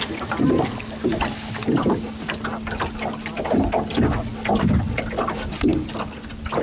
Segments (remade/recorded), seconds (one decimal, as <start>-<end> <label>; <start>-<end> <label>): 0.0-6.6 recorded